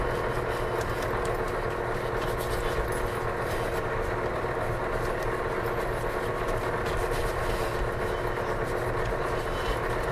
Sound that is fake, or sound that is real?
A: real